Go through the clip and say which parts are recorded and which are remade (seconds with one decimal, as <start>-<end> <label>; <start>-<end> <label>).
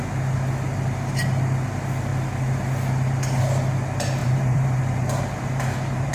0.0-4.2 recorded; 4.2-6.1 remade